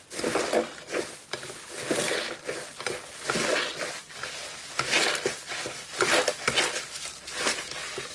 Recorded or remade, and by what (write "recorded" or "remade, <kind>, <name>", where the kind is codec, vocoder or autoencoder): recorded